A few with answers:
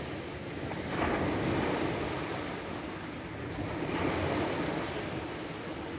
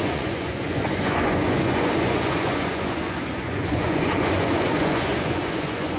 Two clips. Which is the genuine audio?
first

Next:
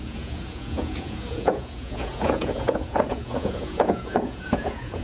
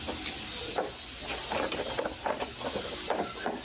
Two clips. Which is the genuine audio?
second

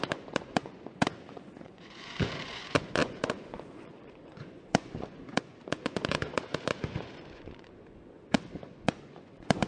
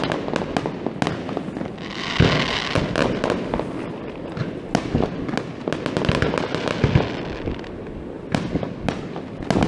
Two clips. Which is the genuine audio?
second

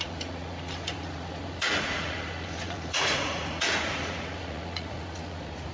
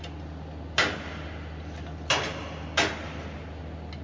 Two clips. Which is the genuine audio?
second